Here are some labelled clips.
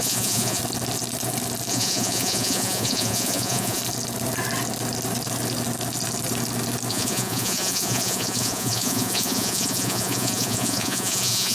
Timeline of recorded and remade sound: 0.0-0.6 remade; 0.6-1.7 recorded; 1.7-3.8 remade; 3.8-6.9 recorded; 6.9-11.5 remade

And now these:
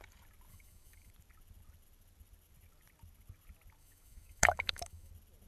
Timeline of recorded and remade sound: 0.0-0.5 recorded; 0.5-1.1 remade; 1.1-3.8 recorded; 3.8-5.1 remade; 5.1-5.5 recorded

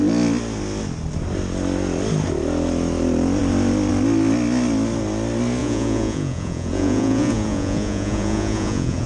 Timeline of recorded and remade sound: 0.0-5.6 recorded; 5.6-9.1 remade